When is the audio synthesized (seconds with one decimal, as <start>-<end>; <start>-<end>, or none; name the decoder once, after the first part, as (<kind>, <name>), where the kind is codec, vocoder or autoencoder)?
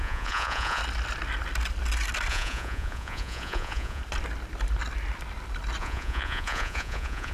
0.0-0.8 (vocoder, Vocos); 2.3-4.0; 5.8-7.3